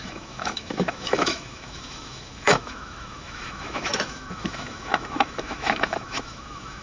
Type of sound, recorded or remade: remade